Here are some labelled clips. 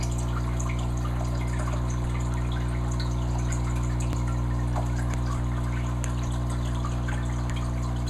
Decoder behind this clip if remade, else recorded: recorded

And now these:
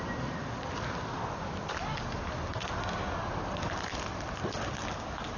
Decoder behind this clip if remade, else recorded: recorded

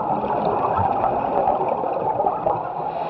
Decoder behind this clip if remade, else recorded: recorded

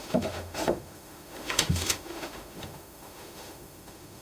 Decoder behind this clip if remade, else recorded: remade, autoencoder, DAC-VAE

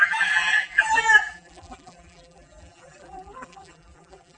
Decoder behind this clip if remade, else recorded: remade, vocoder, BigVGAN v2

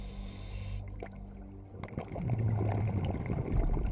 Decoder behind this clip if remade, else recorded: recorded